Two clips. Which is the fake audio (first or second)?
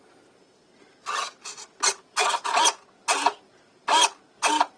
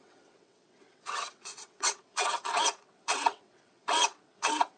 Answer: second